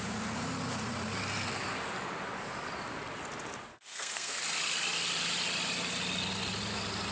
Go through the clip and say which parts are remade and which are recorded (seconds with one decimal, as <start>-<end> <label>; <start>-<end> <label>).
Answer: 0.0-3.7 recorded; 3.7-4.4 remade; 4.4-7.1 recorded